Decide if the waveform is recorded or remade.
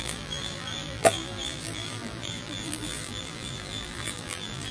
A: remade